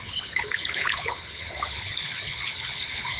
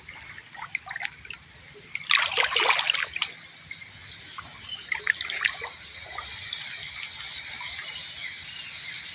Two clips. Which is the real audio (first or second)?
second